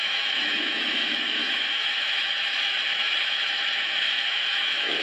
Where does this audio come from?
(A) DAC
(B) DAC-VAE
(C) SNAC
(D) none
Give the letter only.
B